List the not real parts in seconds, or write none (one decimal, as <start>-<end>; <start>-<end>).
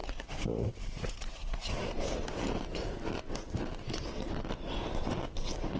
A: 0.0-1.8